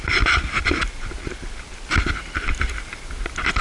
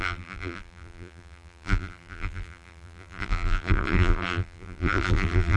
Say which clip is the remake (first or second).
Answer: second